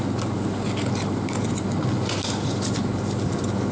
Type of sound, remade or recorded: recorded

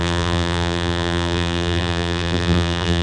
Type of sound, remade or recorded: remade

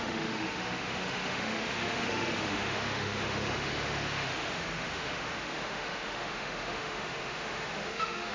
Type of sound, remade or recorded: remade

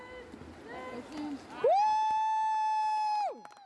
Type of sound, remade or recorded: recorded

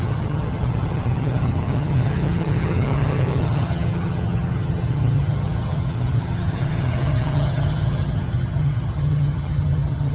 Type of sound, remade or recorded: remade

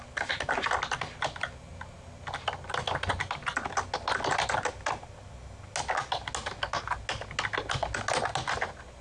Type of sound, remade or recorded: recorded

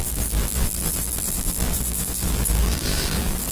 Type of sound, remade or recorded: remade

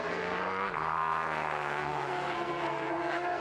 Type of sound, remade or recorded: remade